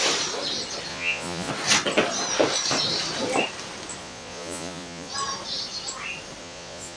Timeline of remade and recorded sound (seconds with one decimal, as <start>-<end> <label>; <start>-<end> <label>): 0.0-0.9 recorded; 0.9-1.5 remade; 1.5-4.0 recorded; 4.0-5.1 remade; 5.1-6.4 recorded; 6.4-7.0 remade